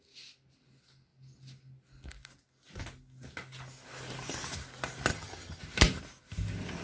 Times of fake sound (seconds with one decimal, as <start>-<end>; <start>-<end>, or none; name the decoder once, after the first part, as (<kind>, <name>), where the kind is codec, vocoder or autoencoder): 5.1-5.6 (vocoder, HiFi-GAN)